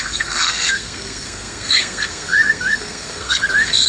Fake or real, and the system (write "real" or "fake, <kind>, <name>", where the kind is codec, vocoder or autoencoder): fake, codec, SNAC